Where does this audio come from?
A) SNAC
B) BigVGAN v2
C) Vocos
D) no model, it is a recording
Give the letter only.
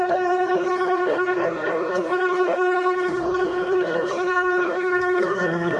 A